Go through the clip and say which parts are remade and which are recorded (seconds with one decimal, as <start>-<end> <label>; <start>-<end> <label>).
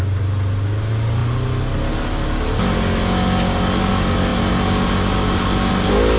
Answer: 0.0-6.2 recorded